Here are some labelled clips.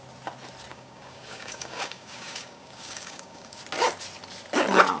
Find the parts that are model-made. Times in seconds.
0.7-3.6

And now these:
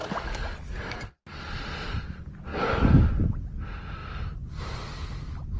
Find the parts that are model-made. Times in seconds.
0.0-1.0; 2.5-3.1

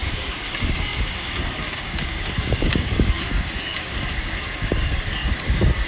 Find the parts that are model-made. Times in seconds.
0.0-5.9

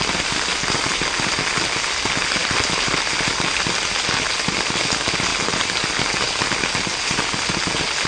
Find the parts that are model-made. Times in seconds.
none